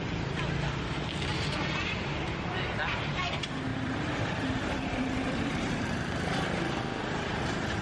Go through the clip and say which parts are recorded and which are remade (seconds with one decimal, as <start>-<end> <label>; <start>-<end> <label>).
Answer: 0.0-3.7 recorded; 3.7-6.6 remade; 6.6-7.0 recorded; 7.0-7.8 remade